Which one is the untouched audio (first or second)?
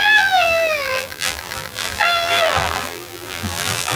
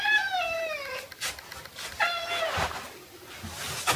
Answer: second